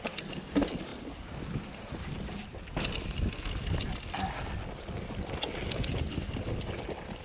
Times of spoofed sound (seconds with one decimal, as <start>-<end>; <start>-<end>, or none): none